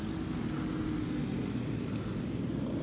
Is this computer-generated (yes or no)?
no